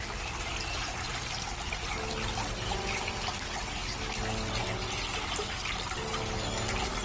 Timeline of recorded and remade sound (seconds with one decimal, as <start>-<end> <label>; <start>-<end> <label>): 0.0-7.0 recorded